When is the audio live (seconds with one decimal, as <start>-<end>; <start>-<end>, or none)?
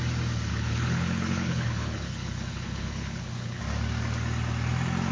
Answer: 0.0-0.5; 3.6-5.1